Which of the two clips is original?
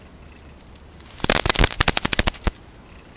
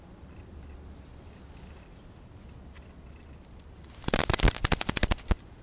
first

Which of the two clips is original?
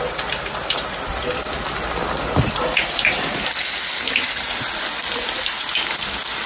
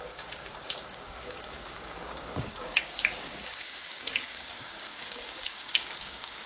first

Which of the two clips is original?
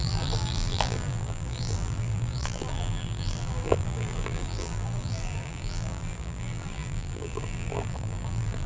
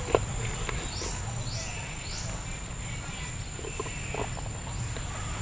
second